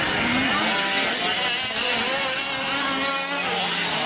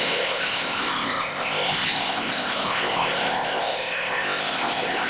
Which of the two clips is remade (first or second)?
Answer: second